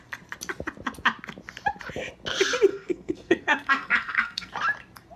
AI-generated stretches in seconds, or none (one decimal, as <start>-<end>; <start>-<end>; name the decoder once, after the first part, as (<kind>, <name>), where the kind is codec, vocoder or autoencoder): 2.7-4.5 (codec, SNAC)